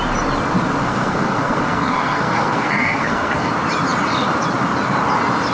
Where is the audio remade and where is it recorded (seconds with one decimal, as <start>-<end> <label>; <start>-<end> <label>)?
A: 0.0-0.8 recorded; 0.8-3.5 remade; 3.5-5.5 recorded